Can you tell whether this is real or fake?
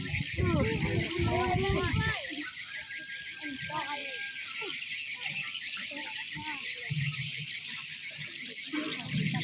real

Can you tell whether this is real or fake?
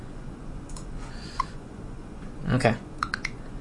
fake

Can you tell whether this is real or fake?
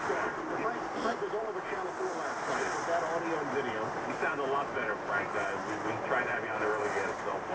real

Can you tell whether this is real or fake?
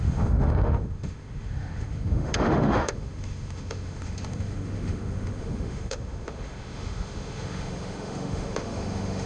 fake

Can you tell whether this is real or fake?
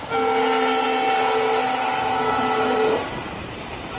real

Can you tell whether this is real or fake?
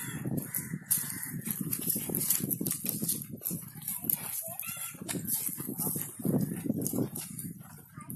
real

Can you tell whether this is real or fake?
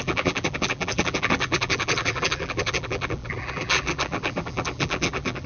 fake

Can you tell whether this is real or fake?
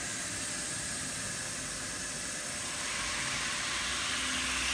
real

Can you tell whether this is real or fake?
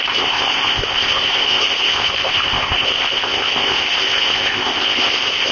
fake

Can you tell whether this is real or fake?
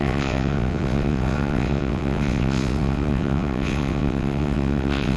fake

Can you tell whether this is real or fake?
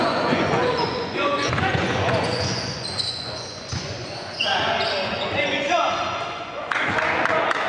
fake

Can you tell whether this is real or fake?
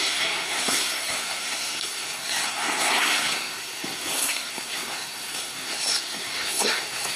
fake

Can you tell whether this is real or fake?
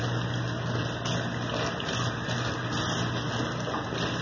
real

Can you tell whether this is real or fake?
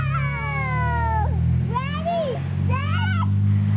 real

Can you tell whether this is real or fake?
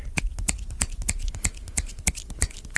real